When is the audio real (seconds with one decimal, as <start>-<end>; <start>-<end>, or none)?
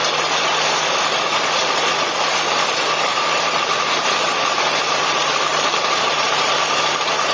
0.0-3.1; 6.6-7.3